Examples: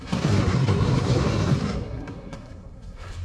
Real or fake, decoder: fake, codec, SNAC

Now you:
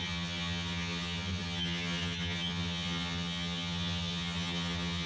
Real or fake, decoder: fake, vocoder, HiFi-GAN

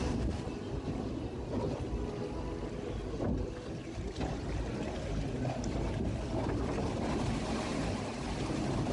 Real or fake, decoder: real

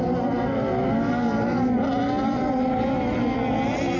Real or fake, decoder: real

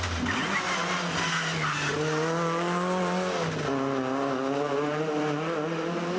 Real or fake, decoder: real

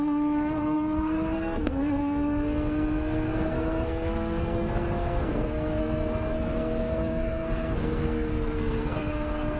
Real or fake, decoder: fake, codec, SNAC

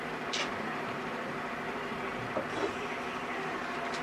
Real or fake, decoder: real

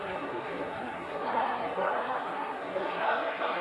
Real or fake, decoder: fake, codec, SNAC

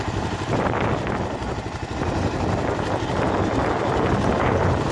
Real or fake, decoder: fake, vocoder, BigVGAN v2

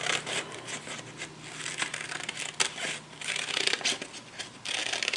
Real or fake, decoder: real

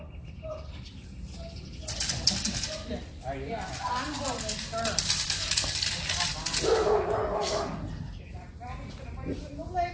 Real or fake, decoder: real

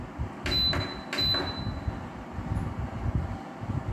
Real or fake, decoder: real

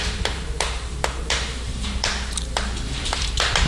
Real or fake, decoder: fake, vocoder, BigVGAN v2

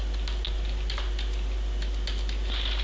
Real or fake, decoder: real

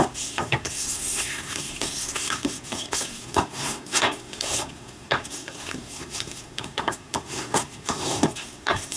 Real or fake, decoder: fake, codec, SNAC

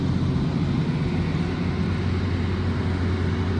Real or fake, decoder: real